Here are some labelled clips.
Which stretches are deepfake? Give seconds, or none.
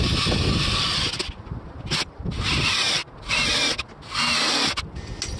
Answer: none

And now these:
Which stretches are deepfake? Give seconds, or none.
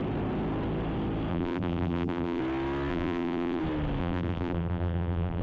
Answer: 1.3-2.4 (vocoder, BigVGAN v2); 2.9-3.6; 4.0-5.4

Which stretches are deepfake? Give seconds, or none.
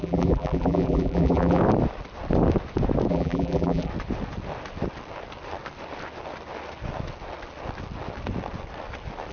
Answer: 0.0-1.6 (vocoder, BigVGAN v2); 3.1-3.9